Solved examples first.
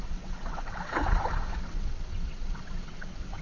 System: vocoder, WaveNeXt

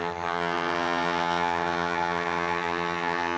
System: vocoder, HiFi-GAN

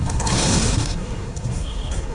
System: codec, SNAC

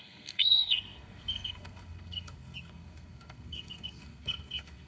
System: codec, SNAC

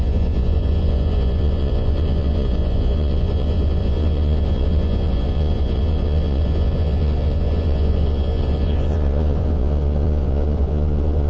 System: vocoder, Vocos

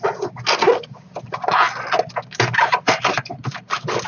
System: none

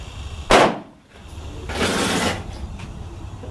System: none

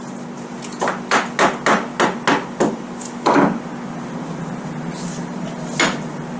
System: none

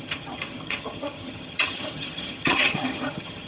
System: vocoder, HiFi-GAN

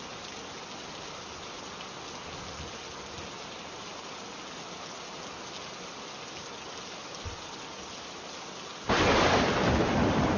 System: none